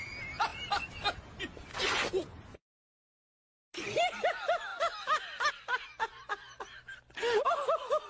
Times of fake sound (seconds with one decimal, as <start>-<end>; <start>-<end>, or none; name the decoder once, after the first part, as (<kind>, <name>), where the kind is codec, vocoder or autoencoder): none